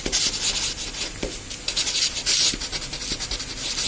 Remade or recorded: recorded